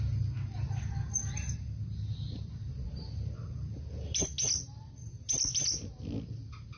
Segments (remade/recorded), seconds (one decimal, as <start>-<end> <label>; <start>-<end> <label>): 0.0-6.8 recorded